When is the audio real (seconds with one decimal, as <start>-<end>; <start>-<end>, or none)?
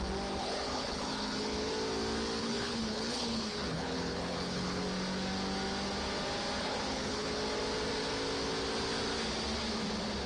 0.0-0.4; 1.7-2.4; 4.8-6.6; 7.4-10.3